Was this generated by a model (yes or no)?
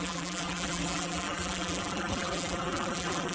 yes